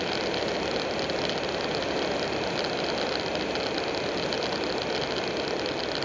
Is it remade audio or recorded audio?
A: recorded